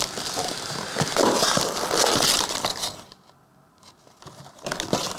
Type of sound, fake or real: real